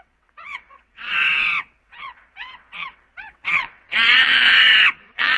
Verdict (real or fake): fake